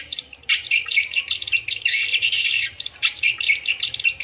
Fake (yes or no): yes